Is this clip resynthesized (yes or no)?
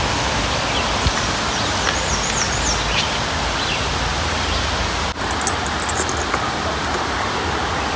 no